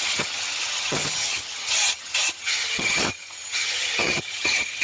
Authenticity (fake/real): fake